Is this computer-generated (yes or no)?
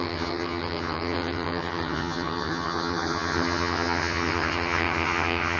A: yes